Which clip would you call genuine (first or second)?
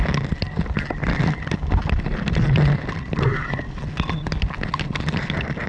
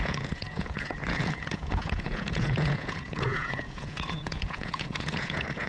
first